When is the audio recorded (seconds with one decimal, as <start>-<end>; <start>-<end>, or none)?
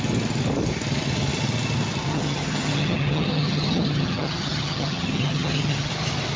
0.0-2.1; 5.9-6.4